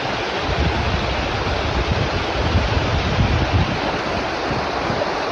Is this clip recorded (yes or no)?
yes